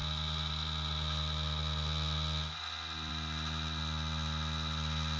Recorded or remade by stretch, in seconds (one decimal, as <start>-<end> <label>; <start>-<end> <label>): 0.0-5.2 recorded